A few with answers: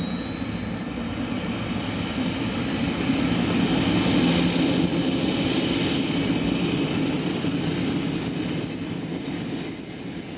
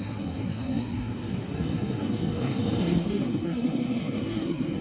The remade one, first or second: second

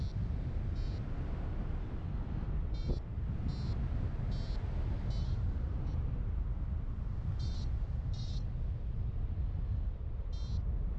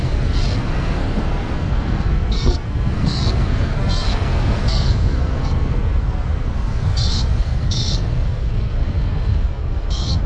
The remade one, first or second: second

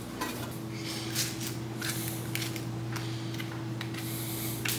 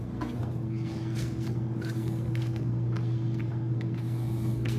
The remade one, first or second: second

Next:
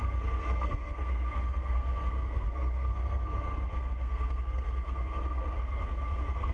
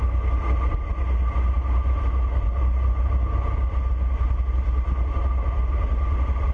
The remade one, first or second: first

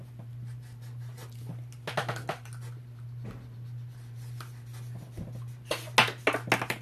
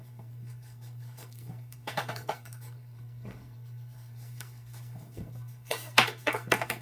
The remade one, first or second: second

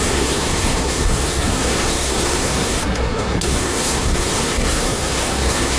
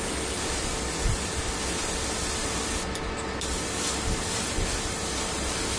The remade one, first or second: first